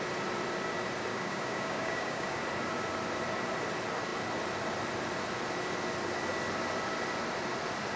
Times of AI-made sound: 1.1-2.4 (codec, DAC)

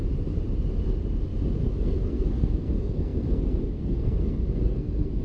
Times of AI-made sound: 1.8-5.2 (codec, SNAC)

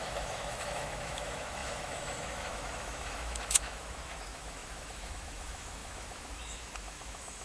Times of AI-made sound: 0.0-7.4 (autoencoder, DAC-VAE)

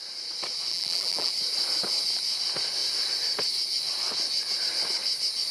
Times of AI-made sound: 0.7-1.3 (vocoder, BigVGAN v2)

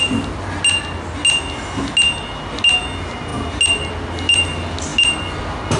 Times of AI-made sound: none

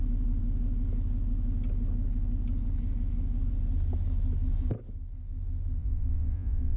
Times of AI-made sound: 5.8-6.8 (vocoder, Vocos)